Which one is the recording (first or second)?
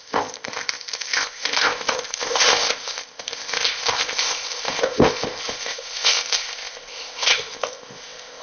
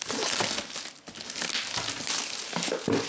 second